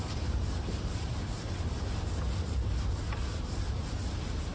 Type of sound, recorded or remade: recorded